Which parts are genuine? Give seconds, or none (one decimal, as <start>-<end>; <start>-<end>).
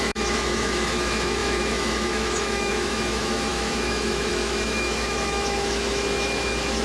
none